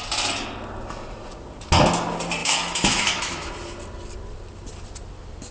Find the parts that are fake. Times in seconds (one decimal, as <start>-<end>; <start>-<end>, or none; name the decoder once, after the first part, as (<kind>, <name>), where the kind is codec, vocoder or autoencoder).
2.4-3.5 (autoencoder, DAC-VAE)